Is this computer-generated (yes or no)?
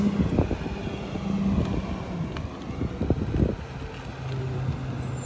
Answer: no